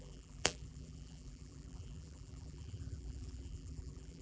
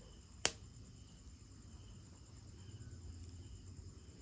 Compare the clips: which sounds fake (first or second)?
first